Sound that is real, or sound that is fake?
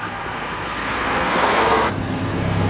fake